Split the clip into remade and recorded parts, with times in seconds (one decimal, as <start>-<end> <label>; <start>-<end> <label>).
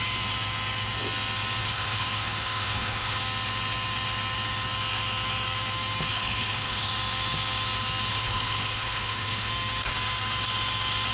0.0-1.6 recorded; 1.6-3.2 remade; 3.2-6.1 recorded; 6.1-6.9 remade; 6.9-8.1 recorded; 8.1-9.5 remade; 9.5-11.1 recorded